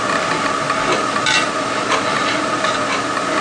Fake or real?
real